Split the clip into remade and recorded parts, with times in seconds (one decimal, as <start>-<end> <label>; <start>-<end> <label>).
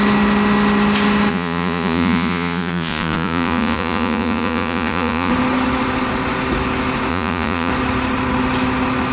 0.0-1.3 recorded; 1.3-5.3 remade; 5.3-7.1 recorded; 7.1-7.7 remade; 7.7-9.1 recorded